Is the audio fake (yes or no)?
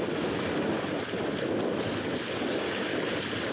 no